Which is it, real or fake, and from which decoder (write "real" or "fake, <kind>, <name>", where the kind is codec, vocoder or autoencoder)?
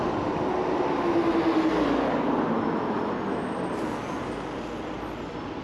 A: real